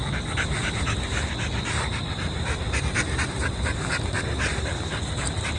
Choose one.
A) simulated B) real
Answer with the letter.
B